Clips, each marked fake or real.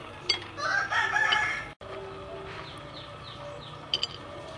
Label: real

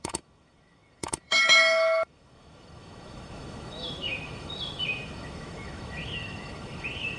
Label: fake